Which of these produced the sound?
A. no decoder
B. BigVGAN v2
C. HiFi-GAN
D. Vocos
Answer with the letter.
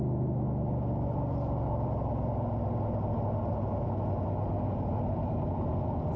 A